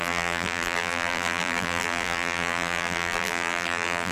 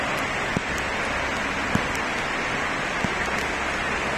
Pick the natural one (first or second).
second